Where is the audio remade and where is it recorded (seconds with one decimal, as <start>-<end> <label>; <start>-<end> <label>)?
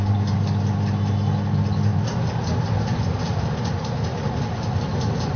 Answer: 0.0-5.4 recorded